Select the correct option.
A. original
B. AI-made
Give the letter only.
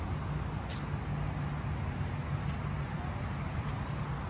A